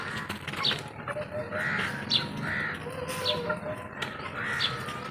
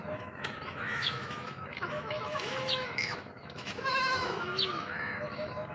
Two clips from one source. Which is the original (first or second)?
first